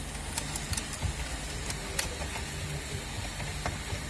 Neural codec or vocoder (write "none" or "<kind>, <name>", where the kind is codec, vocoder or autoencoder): none